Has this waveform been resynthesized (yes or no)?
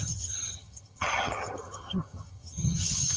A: yes